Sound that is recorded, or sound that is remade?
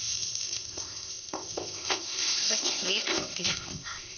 remade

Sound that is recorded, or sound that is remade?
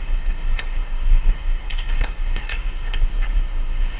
remade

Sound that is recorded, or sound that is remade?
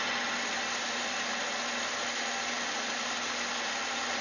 recorded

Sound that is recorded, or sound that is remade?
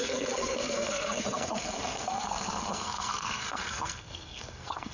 remade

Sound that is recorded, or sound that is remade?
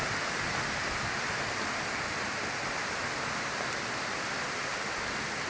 recorded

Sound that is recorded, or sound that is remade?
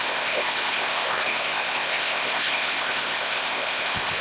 remade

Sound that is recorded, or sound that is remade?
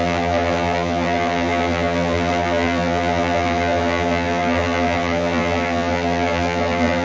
remade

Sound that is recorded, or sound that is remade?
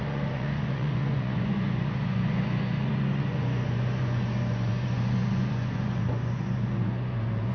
remade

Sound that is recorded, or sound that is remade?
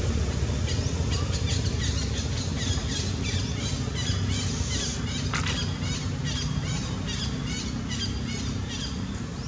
recorded